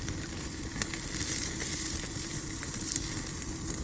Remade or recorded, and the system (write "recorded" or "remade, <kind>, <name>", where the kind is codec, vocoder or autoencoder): recorded